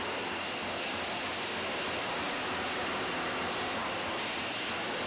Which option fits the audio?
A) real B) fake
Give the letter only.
A